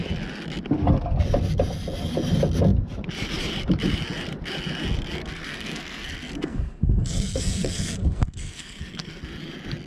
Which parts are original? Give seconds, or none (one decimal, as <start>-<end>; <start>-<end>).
0.0-5.2; 9.2-9.9